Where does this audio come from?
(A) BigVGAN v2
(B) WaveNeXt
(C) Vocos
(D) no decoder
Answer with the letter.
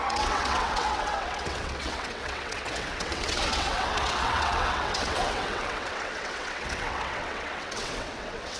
B